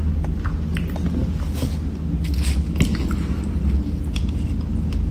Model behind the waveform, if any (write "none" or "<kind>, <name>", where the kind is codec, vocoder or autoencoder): none